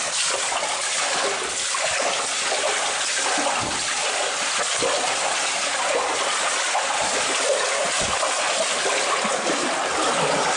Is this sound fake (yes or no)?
no